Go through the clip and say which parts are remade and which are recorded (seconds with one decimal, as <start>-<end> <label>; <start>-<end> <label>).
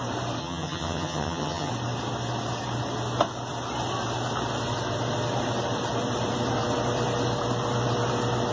0.0-0.4 recorded; 0.4-1.7 remade; 1.7-8.5 recorded